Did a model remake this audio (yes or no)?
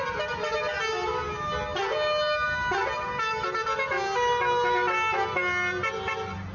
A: no